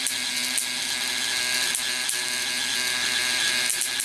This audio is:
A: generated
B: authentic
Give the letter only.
B